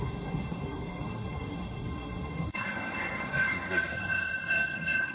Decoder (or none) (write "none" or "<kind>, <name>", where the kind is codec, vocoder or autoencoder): codec, SNAC